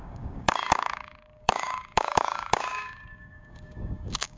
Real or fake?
fake